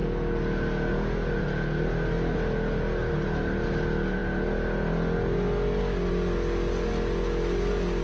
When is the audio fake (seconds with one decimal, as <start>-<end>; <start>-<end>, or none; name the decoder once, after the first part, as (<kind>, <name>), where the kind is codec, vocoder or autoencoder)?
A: none